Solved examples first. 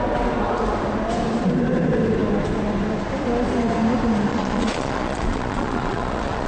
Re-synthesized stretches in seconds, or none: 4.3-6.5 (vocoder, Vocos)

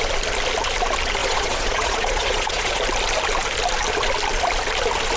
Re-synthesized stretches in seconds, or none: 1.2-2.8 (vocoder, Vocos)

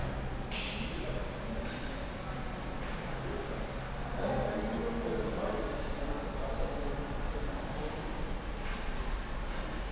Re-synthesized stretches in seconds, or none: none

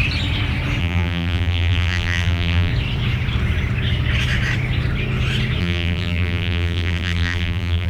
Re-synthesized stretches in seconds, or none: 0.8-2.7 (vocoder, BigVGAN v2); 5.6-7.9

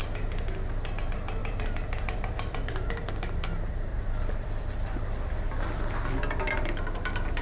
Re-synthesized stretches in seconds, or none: 1.4-3.2 (vocoder, BigVGAN v2); 3.9-5.6

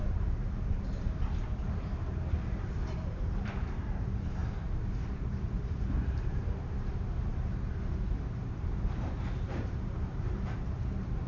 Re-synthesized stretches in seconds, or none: 0.0-7.3 (vocoder, BigVGAN v2); 8.1-11.3

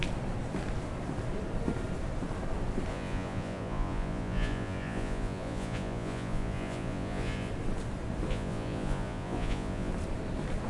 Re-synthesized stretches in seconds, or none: 2.9-7.5 (vocoder, Vocos); 8.3-9.9